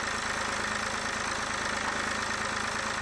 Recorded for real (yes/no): yes